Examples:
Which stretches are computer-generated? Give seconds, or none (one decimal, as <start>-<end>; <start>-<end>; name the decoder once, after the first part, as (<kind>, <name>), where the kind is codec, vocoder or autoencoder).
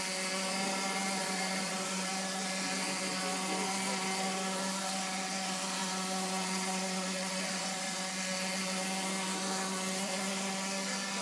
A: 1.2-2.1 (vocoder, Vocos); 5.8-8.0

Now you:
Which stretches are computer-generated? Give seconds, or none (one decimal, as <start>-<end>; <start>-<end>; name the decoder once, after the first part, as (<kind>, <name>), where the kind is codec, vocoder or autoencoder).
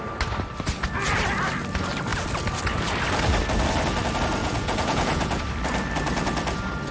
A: 4.4-5.4 (vocoder, Vocos)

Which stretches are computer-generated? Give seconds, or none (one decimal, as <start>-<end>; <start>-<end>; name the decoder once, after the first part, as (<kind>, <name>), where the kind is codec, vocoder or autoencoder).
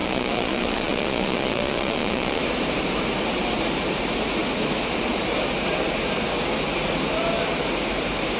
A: 0.0-2.4 (vocoder, Vocos)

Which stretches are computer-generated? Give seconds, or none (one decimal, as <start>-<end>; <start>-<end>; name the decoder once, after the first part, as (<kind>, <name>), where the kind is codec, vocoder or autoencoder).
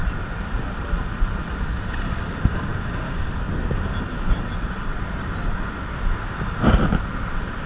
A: none